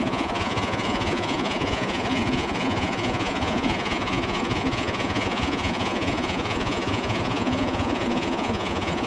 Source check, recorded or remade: remade